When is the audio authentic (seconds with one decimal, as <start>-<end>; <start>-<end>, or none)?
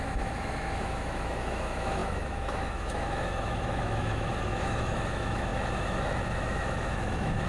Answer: none